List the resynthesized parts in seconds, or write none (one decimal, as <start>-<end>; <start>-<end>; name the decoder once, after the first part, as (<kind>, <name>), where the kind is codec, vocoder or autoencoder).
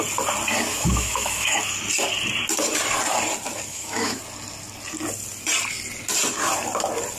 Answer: 0.7-1.6 (autoencoder, DAC-VAE); 3.7-4.2